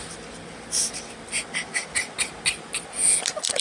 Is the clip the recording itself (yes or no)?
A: yes